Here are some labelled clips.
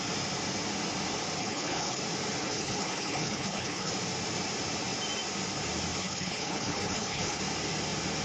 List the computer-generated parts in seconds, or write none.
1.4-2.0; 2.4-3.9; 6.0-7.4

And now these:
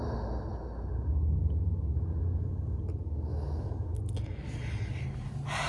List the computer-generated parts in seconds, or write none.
3.3-4.0

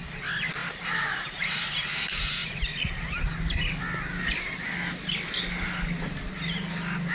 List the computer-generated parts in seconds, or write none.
0.6-1.7

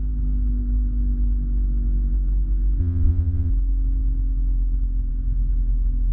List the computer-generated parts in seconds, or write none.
2.8-3.5

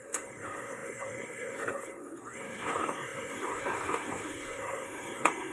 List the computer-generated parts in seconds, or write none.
0.0-5.5

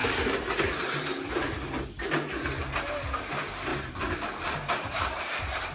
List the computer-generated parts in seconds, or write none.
3.7-5.2

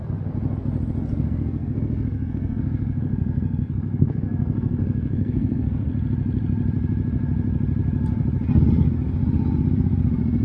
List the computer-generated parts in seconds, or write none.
1.1-5.9

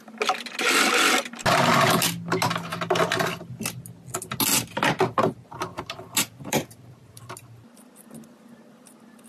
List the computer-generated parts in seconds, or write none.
5.7-7.2